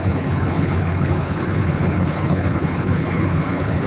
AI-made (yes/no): yes